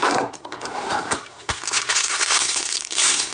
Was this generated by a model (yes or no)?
yes